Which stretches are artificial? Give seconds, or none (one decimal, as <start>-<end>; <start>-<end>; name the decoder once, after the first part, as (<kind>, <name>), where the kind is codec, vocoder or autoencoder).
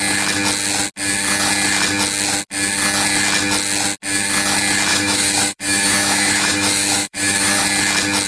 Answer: 4.9-7.6 (autoencoder, DAC-VAE)